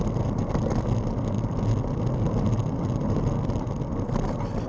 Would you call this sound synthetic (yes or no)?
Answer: no